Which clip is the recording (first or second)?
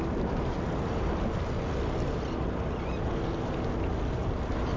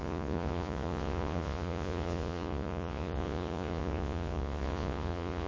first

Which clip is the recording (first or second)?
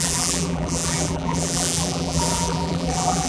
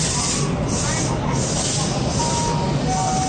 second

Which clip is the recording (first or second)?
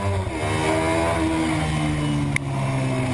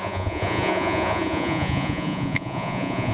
first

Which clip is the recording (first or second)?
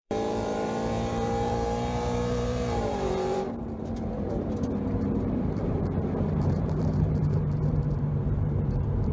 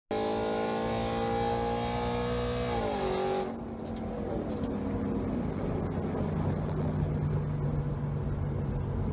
second